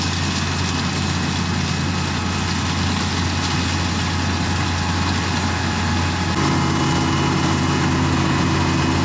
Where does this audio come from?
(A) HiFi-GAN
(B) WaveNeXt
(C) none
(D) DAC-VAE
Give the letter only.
C